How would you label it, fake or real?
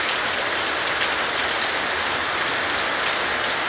real